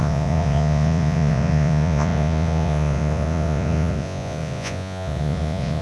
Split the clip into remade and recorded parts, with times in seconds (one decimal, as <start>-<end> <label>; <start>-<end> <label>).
0.0-5.8 remade